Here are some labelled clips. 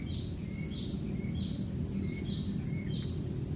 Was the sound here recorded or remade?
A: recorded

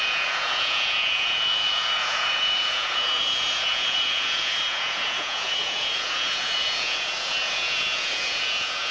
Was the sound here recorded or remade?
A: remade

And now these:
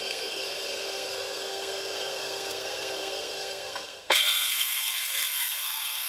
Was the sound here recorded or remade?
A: remade